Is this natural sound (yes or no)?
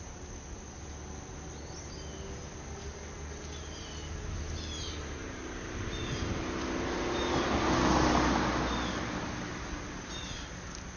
yes